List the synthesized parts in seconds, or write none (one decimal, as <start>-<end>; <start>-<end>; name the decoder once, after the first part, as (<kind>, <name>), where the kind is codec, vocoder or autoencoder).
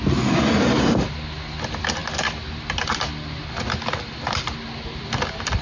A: none